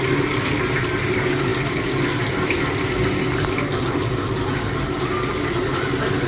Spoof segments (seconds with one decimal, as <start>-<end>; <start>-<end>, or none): none